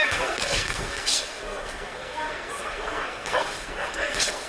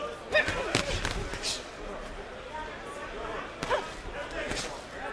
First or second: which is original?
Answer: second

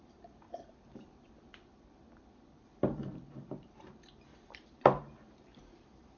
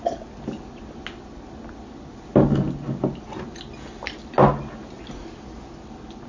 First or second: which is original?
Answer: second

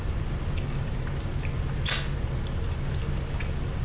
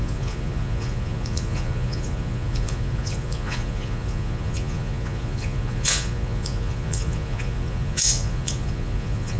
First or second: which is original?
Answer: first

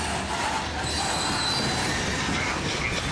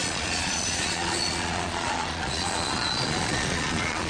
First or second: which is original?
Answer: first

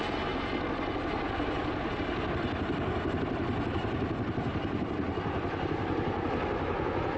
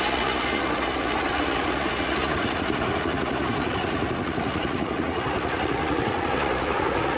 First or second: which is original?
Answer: first